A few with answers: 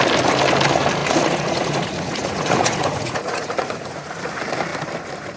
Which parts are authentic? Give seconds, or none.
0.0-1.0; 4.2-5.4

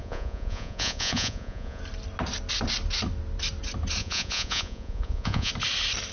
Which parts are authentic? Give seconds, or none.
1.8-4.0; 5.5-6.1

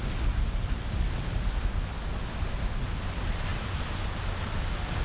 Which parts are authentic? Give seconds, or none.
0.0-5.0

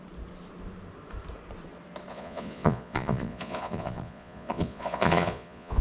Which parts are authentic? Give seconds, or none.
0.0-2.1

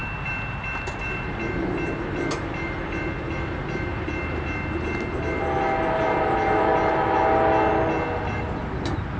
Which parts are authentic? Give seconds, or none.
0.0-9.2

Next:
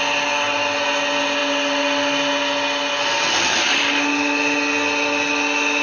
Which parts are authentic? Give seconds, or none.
0.0-5.8

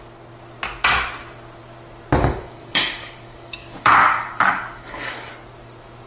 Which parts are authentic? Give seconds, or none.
0.0-2.2; 5.3-6.1